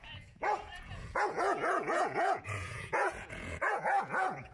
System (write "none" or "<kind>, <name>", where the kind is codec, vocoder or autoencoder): vocoder, Vocos